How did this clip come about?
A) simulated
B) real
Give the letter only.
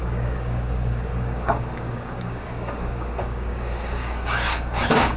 A